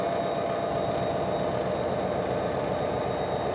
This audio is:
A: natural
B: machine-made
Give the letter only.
A